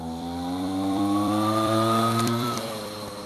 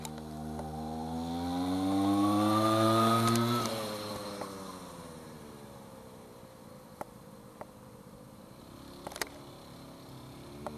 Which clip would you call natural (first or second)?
second